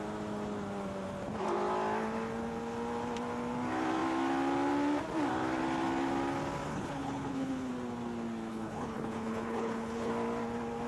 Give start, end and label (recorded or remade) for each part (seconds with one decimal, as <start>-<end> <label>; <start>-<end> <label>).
0.0-6.7 recorded; 6.7-7.7 remade; 7.7-8.5 recorded; 8.5-10.1 remade; 10.1-10.9 recorded